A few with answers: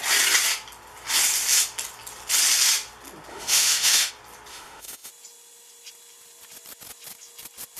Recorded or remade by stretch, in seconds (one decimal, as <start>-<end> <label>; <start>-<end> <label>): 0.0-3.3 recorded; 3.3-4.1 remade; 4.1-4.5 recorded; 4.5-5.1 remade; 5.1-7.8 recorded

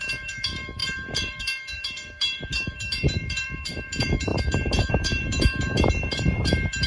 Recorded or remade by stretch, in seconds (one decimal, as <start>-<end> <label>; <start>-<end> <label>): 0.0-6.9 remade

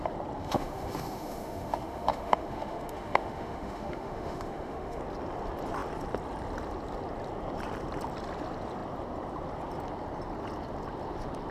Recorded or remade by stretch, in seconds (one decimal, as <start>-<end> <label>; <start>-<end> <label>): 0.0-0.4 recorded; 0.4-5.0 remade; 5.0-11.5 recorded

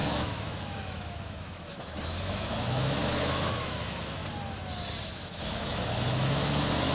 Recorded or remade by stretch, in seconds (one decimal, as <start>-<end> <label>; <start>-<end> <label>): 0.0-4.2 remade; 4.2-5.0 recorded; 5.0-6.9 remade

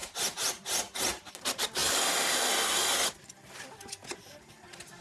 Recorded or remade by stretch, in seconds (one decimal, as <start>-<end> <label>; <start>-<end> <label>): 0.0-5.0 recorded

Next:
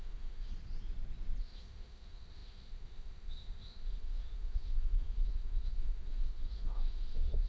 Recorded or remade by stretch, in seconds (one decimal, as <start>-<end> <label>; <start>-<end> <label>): 0.0-0.5 remade; 0.5-1.4 recorded; 1.4-7.5 remade

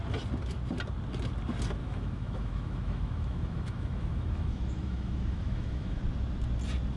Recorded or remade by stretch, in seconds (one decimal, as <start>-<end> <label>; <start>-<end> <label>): 0.0-1.8 recorded; 1.8-6.0 remade; 6.0-7.0 recorded

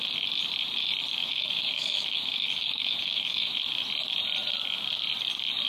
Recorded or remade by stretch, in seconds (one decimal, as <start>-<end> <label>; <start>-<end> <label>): 0.0-1.2 recorded; 1.2-3.6 remade; 3.6-5.7 recorded